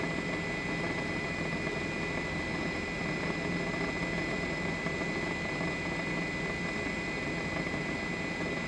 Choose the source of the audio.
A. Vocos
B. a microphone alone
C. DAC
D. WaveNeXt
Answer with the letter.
B